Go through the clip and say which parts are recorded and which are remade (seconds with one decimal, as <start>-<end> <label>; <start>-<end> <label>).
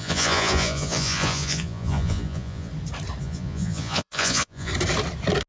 0.0-2.7 remade; 2.7-3.2 recorded; 3.2-4.7 remade; 4.7-5.5 recorded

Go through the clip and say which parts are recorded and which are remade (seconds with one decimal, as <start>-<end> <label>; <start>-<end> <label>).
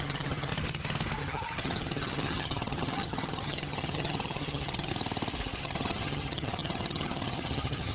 0.0-0.5 remade; 0.5-1.2 recorded; 1.2-4.9 remade; 4.9-5.6 recorded; 5.6-7.9 remade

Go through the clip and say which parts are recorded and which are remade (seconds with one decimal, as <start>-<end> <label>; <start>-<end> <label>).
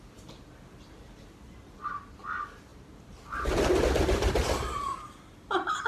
0.0-2.7 recorded; 2.7-4.5 remade; 4.5-5.9 recorded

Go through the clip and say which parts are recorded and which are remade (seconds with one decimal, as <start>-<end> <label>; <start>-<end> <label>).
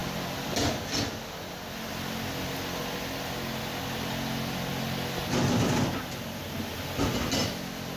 0.0-8.0 recorded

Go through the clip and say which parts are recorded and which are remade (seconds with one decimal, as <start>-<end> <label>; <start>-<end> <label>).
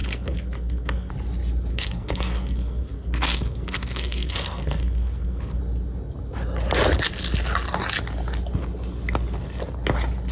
0.0-1.1 remade; 1.1-1.7 recorded; 1.7-5.6 remade; 5.6-10.3 recorded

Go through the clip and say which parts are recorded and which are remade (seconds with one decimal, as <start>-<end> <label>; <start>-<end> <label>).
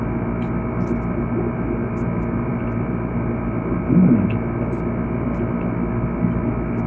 0.0-6.9 recorded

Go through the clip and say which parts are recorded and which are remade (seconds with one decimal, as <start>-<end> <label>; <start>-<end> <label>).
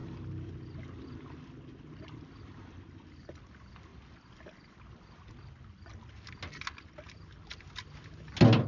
0.0-8.7 recorded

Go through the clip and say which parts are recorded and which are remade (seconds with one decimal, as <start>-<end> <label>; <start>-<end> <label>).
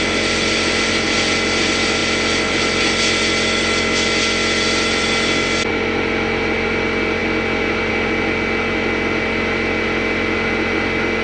0.0-11.2 recorded